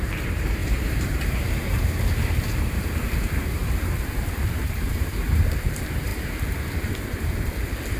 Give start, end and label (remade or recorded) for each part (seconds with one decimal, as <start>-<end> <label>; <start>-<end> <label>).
0.0-6.1 remade; 6.1-8.0 recorded